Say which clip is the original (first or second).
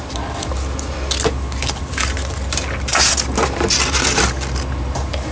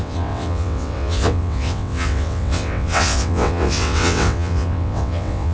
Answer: first